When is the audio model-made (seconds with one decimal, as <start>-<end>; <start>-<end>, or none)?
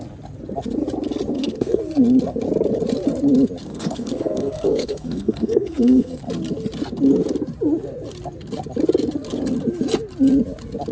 1.3-1.8; 3.7-6.2